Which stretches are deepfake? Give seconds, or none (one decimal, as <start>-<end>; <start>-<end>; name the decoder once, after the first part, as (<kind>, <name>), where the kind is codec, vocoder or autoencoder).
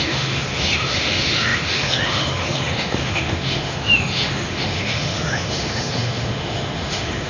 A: 0.0-7.3 (autoencoder, DAC-VAE)